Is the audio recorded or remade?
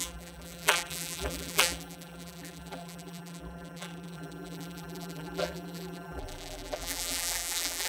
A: remade